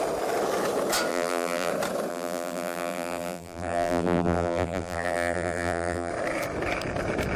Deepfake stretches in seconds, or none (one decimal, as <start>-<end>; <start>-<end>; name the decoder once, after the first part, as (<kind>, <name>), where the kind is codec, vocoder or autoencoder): 1.1-1.7 (vocoder, BigVGAN v2); 2.1-6.1